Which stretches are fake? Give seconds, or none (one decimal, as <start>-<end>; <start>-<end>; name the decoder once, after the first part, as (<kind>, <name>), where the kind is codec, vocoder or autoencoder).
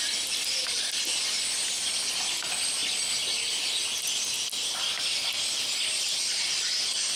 0.0-2.8 (vocoder, BigVGAN v2); 4.7-7.2